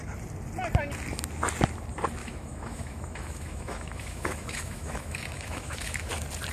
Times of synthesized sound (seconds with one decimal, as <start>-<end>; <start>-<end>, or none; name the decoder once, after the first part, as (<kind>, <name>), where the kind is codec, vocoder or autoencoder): 2.2-6.1 (autoencoder, DAC-VAE)